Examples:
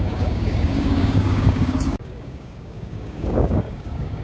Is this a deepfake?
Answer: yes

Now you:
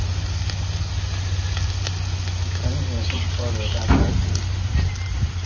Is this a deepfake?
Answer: no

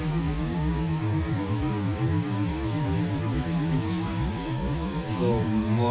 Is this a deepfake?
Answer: yes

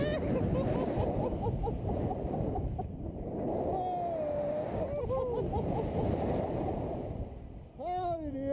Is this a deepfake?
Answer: no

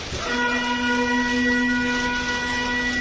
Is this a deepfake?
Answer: no